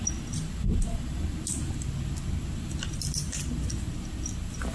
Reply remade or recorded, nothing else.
recorded